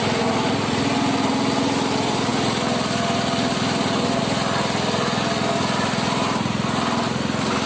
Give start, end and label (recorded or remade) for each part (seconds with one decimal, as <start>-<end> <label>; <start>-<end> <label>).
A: 0.0-7.7 recorded